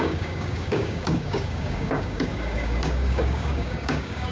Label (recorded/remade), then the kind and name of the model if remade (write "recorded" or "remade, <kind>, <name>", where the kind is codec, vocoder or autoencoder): remade, codec, DAC